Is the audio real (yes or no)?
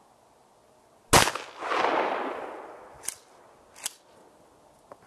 yes